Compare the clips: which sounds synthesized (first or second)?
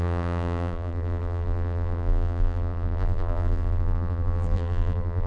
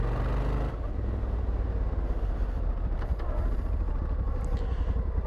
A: first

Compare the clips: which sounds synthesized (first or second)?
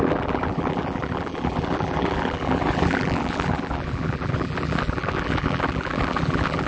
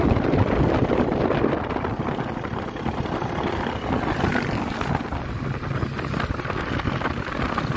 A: first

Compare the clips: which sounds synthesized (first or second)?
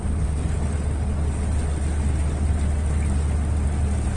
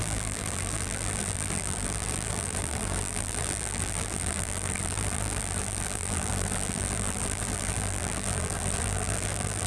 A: second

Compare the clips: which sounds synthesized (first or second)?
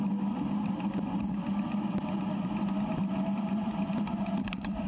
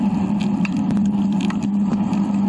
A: first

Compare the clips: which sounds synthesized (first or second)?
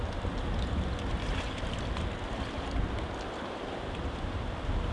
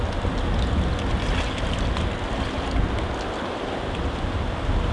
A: first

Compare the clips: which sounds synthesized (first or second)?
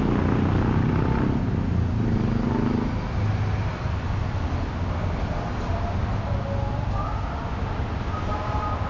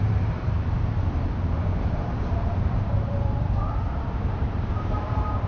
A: second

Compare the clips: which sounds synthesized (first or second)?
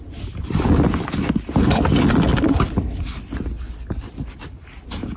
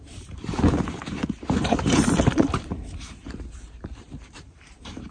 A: second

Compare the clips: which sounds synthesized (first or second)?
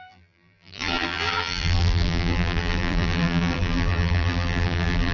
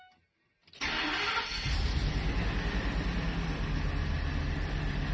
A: first